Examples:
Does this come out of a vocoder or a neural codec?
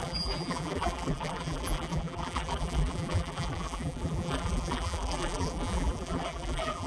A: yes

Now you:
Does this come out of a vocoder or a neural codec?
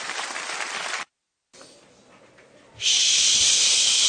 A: no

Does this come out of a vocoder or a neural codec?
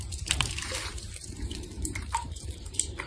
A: yes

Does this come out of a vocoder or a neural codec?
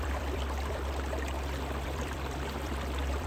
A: yes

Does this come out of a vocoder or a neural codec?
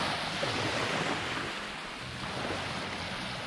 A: no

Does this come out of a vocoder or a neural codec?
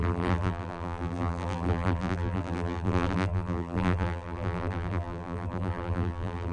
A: yes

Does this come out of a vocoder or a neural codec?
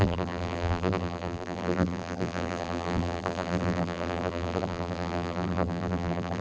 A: yes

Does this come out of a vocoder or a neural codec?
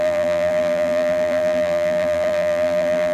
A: yes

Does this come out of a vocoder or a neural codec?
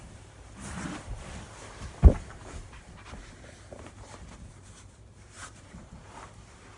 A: yes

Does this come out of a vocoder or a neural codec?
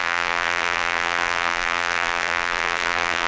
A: yes